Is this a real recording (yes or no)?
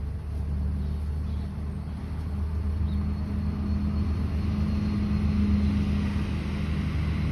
yes